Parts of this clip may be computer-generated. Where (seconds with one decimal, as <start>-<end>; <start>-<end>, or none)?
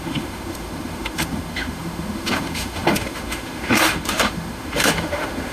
0.0-5.5